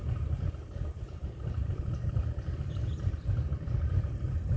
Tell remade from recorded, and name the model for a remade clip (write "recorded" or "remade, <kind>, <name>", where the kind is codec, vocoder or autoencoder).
recorded